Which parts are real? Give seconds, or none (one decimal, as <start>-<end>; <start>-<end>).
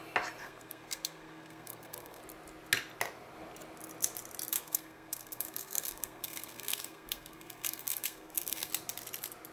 0.0-0.4; 2.2-4.5; 8.7-9.5